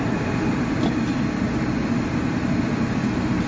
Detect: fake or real real